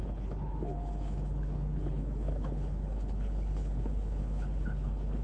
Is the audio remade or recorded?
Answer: remade